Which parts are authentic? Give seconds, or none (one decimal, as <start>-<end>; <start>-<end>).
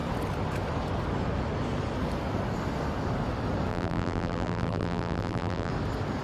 0.0-3.7; 5.7-6.2